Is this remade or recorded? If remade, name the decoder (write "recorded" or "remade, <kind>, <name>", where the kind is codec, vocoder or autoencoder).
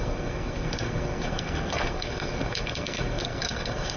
remade, codec, SNAC